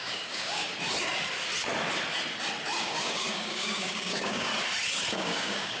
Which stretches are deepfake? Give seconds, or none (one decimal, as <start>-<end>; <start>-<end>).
0.0-0.7; 2.8-4.5; 5.1-5.8